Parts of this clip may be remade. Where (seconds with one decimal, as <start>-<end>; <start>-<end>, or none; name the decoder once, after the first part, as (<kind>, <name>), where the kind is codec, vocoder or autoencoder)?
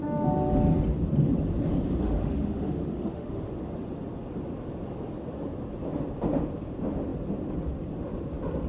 2.0-3.5 (autoencoder, DAC-VAE)